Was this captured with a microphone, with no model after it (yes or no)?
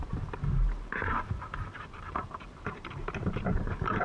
no